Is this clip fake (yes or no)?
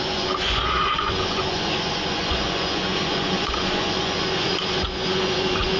yes